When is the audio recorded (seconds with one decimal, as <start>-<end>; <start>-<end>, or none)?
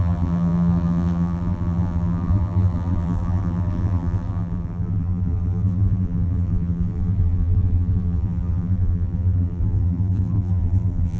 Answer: none